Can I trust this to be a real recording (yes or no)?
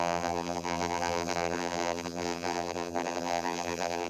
no